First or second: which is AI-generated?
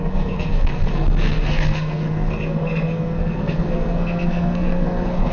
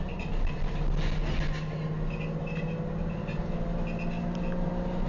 first